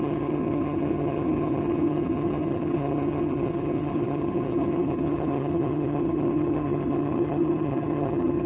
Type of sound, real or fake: fake